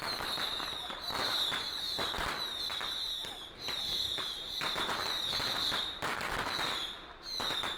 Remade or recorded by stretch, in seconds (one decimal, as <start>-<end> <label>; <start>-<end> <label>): 0.0-6.8 remade; 6.8-7.8 recorded